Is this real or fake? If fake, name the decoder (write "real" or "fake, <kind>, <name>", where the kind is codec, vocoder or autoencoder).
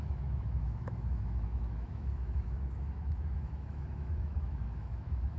fake, autoencoder, DAC-VAE